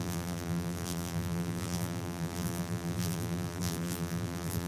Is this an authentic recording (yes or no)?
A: no